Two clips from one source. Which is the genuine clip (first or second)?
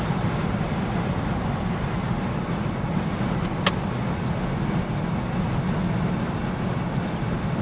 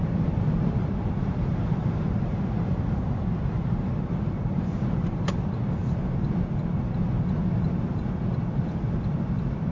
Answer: first